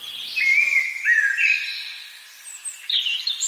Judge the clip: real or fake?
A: real